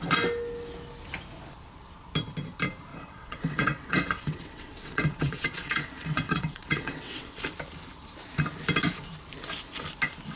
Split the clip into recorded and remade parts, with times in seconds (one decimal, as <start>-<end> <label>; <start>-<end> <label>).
0.0-2.9 recorded; 2.9-7.4 remade; 7.4-10.4 recorded